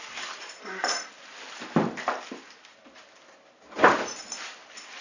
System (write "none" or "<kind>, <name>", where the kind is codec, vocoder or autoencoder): vocoder, BigVGAN v2